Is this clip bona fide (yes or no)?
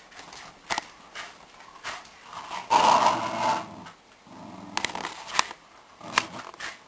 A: yes